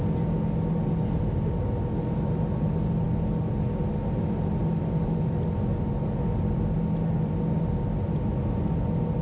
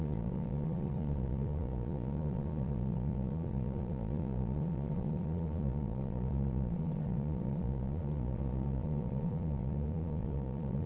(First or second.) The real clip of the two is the first